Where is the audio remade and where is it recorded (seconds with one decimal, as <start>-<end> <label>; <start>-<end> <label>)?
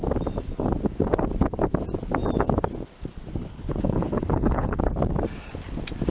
0.0-3.4 recorded; 3.4-4.8 remade; 4.8-6.1 recorded